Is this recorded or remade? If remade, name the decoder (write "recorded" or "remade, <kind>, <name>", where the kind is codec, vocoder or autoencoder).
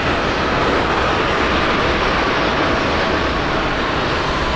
recorded